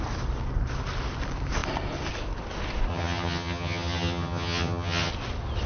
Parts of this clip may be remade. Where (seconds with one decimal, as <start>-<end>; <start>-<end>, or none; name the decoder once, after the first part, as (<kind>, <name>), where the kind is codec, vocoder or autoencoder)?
2.9-5.1 (vocoder, HiFi-GAN)